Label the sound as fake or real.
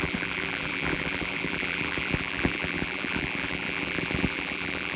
fake